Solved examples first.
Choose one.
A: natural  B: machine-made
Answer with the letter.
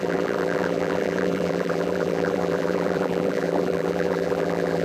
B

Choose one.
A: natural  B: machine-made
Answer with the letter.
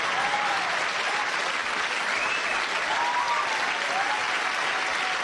A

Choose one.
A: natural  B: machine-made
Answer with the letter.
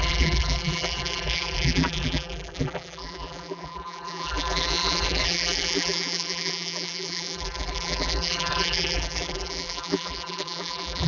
B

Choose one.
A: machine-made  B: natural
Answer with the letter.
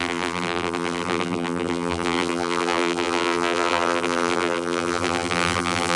A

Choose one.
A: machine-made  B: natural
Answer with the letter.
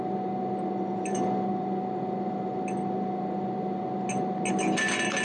B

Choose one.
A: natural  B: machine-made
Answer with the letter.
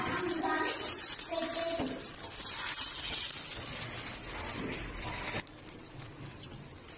A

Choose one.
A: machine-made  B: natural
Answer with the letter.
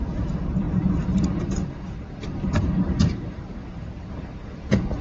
A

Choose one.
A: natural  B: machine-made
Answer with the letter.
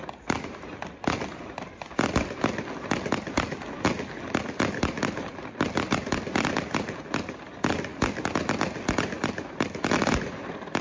A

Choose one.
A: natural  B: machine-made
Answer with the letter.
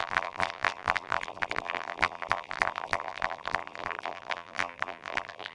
B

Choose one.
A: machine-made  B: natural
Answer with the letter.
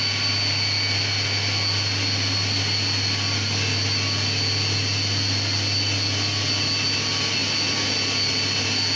B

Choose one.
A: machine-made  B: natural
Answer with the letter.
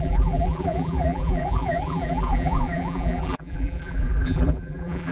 A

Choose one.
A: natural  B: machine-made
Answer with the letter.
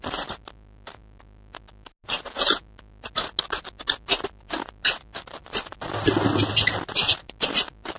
A